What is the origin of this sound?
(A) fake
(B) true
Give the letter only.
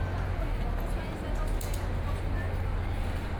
B